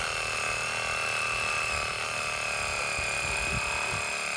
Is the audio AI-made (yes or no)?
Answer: no